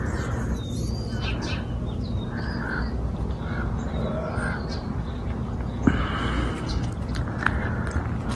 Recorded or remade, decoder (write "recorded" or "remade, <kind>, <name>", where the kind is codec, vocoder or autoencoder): recorded